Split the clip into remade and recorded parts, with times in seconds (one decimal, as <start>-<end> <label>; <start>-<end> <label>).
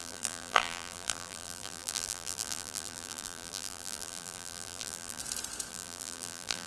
0.0-5.2 remade; 5.2-5.7 recorded; 5.7-6.7 remade